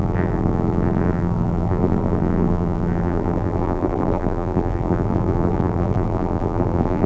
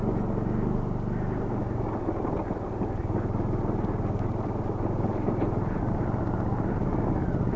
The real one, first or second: second